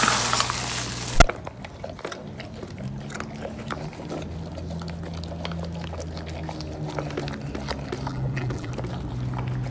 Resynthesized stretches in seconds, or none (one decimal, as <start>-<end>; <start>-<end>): 8.1-8.7